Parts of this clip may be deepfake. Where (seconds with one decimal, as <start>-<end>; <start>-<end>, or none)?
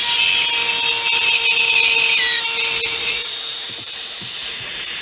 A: 3.0-5.0